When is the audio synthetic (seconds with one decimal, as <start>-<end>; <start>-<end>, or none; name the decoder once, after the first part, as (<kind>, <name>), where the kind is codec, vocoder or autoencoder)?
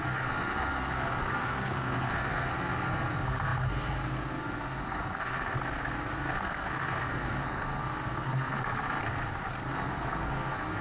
0.0-9.0 (codec, SNAC); 9.7-10.8